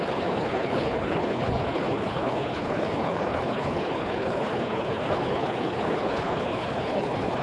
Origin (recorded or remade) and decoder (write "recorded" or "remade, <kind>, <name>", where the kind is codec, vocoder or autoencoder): remade, codec, HILCodec